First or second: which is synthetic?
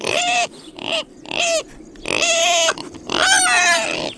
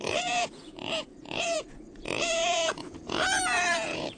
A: second